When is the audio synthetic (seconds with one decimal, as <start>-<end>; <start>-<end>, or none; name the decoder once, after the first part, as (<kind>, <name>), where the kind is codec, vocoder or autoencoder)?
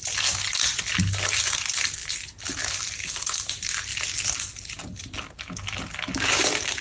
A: none